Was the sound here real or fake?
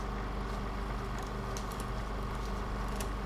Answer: real